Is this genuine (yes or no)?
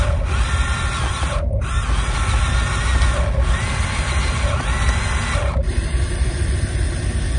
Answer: yes